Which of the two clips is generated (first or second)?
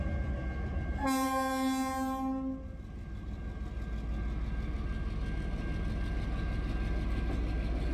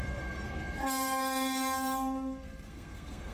second